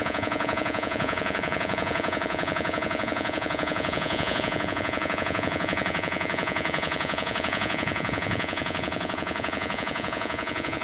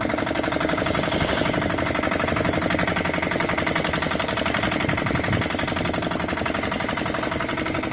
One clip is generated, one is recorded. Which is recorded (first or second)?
second